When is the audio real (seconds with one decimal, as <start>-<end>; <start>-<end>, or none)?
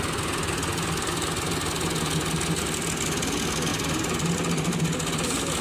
0.0-5.6